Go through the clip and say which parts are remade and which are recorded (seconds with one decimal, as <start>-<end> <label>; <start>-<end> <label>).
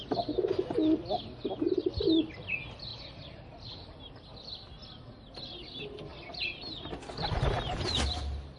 0.0-2.9 recorded; 2.9-4.0 remade; 4.0-6.1 recorded; 6.1-8.6 remade